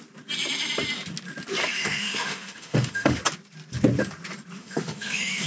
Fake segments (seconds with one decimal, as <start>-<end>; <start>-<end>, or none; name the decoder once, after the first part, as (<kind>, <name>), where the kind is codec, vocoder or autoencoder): 1.6-3.2 (autoencoder, DAC-VAE); 4.6-5.5